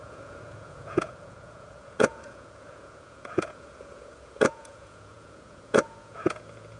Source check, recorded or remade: remade